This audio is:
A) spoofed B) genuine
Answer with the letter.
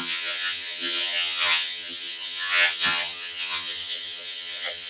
A